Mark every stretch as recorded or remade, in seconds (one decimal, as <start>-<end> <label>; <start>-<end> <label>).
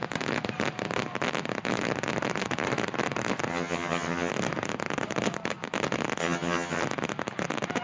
0.0-3.5 recorded; 3.5-4.3 remade; 4.3-6.2 recorded; 6.2-6.8 remade; 6.8-7.8 recorded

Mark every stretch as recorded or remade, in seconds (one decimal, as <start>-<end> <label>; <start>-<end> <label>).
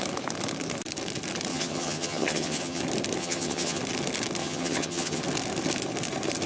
0.0-1.5 recorded; 1.5-2.8 remade; 2.8-3.2 recorded; 3.2-3.8 remade; 3.8-4.4 recorded; 4.4-5.2 remade; 5.2-6.5 recorded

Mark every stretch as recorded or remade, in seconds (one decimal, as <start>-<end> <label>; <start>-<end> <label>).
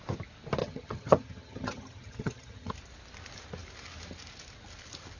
0.0-0.6 recorded; 0.6-2.7 remade; 2.7-5.2 recorded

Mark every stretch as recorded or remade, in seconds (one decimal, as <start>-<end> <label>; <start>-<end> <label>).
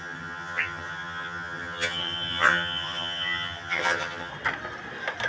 0.0-4.3 remade; 4.3-5.3 recorded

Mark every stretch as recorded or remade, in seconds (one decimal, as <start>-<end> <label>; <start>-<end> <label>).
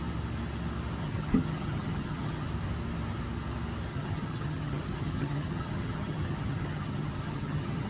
0.0-1.0 recorded; 1.0-2.5 remade; 2.5-3.9 recorded; 3.9-7.9 remade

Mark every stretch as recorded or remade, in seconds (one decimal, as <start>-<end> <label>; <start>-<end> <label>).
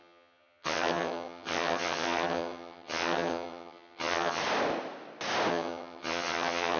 0.0-4.4 remade; 4.4-5.5 recorded; 5.5-6.8 remade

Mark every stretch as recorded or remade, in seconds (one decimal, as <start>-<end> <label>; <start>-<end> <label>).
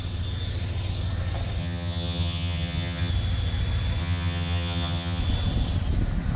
0.0-1.6 recorded; 1.6-3.1 remade; 3.1-4.0 recorded; 4.0-5.2 remade; 5.2-6.4 recorded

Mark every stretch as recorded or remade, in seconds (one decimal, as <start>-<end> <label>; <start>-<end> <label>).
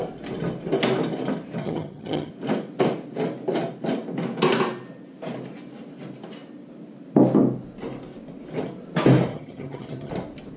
0.0-1.6 recorded; 1.6-2.3 remade; 2.3-9.3 recorded; 9.3-10.1 remade; 10.1-10.6 recorded